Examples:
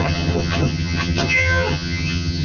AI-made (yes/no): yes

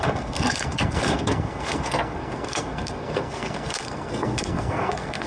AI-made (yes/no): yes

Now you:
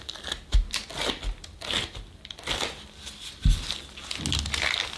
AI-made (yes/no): no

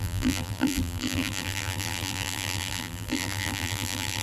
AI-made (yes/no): yes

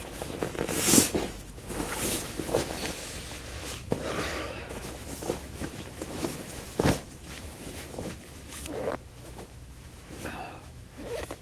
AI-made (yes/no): yes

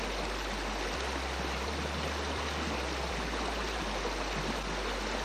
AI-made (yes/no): no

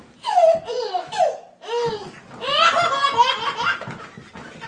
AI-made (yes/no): no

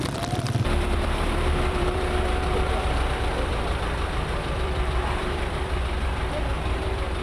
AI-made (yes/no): yes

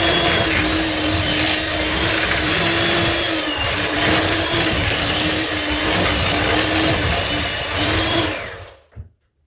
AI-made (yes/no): no